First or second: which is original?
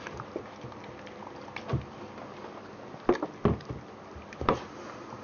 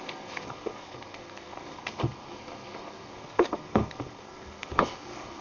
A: first